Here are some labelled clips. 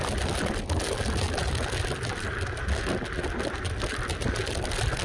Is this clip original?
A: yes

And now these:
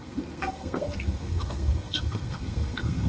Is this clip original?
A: no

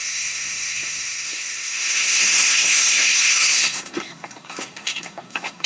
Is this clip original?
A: no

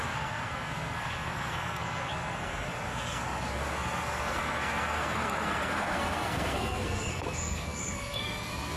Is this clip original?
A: no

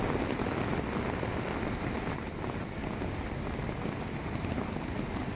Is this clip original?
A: yes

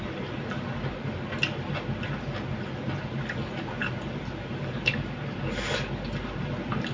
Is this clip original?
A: yes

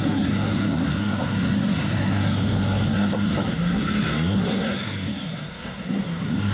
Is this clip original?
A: no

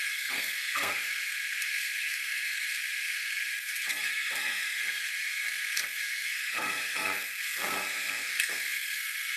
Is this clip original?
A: no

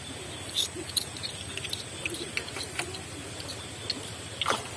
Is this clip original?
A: yes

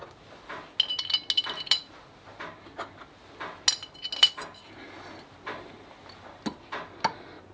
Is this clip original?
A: yes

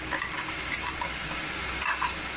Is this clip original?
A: yes